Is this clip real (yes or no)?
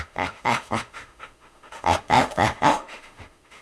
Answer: no